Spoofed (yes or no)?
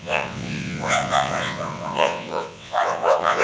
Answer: yes